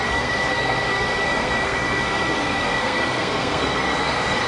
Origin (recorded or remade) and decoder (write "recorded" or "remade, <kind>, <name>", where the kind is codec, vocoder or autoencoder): remade, codec, SNAC